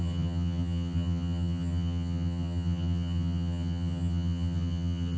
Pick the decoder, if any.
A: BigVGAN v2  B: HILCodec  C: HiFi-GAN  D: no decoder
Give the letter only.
C